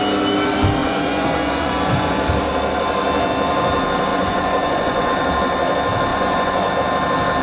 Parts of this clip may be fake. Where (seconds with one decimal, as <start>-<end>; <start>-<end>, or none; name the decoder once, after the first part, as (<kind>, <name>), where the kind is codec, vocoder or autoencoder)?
0.8-2.2 (vocoder, Vocos); 4.1-5.1; 6.1-6.7